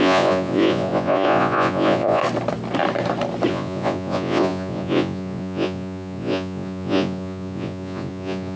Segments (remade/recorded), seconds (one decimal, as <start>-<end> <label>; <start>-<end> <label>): 0.0-2.2 remade; 2.2-3.5 recorded; 3.5-8.6 remade